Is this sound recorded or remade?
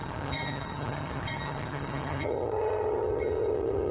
remade